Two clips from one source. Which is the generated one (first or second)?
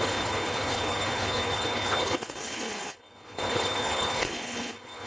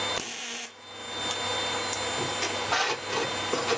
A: first